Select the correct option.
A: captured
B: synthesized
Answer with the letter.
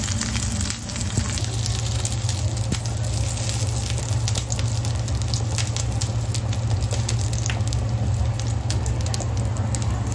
A